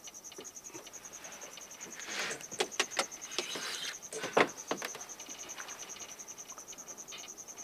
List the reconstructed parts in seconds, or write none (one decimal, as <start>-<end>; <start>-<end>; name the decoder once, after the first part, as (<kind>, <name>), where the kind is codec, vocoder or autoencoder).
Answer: none